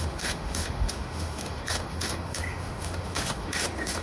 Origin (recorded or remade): remade